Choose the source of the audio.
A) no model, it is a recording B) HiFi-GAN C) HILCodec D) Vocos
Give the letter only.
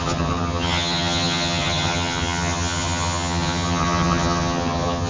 B